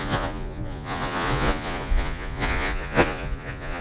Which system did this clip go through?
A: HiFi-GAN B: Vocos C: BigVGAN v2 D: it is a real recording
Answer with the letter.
B